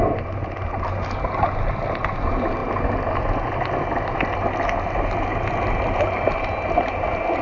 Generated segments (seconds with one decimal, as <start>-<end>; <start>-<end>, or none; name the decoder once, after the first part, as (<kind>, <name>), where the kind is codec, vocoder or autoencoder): none